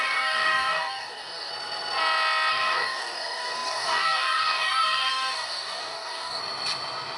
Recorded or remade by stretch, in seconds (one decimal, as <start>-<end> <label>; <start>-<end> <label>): 0.0-1.5 remade; 1.5-2.5 recorded; 2.5-6.4 remade; 6.4-7.2 recorded